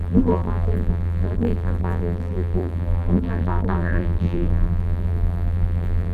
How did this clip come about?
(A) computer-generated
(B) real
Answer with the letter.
A